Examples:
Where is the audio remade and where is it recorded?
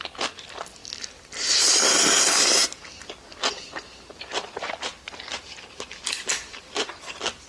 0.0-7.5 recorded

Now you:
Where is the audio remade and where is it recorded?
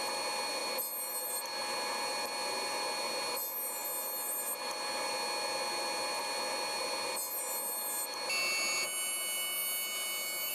0.0-10.5 recorded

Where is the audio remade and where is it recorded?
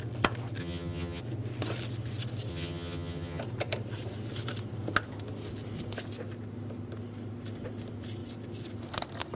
0.0-0.6 recorded; 0.6-1.2 remade; 1.2-2.5 recorded; 2.5-3.4 remade; 3.4-9.4 recorded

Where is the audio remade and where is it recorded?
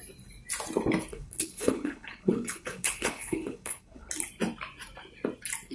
0.0-1.1 recorded; 1.1-4.1 remade; 4.1-5.7 recorded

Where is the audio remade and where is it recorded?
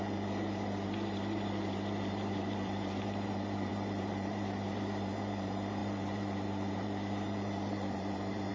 0.0-8.5 remade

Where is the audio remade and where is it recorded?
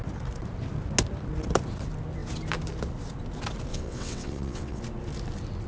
0.0-3.7 recorded; 3.7-4.8 remade; 4.8-5.7 recorded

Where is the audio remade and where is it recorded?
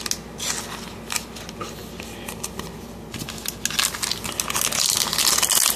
0.0-5.8 recorded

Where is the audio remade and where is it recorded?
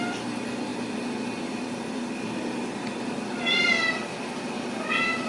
0.0-5.3 recorded